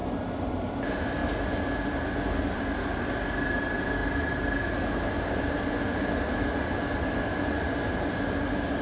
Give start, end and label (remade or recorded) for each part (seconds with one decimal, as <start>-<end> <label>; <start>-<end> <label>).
0.0-8.8 recorded